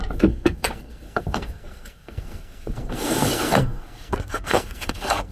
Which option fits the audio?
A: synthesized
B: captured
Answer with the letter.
A